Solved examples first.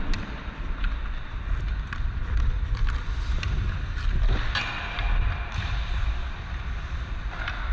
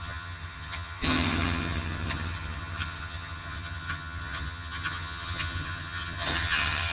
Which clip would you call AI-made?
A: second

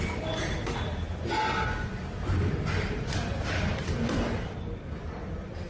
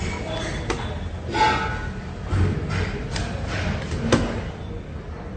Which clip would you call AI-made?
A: first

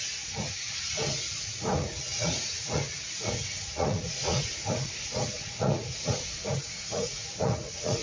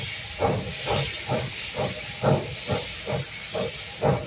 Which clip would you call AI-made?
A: first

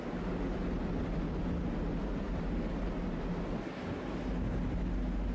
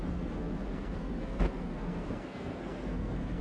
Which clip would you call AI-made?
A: second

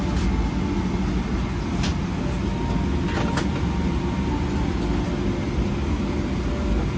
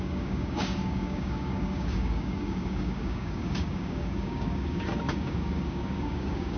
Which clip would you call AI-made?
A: second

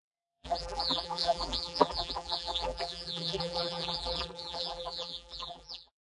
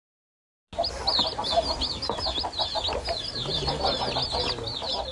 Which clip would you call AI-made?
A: first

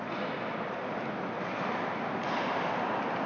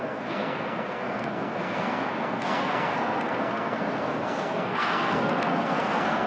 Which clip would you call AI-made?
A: second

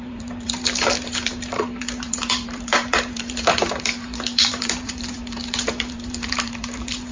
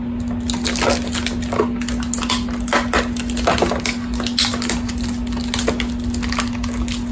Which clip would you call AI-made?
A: first